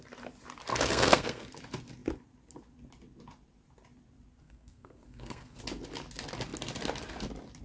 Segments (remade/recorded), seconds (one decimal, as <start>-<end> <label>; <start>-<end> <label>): 0.0-0.7 recorded; 0.7-1.5 remade; 1.5-4.4 recorded; 4.4-5.6 remade; 5.6-7.6 recorded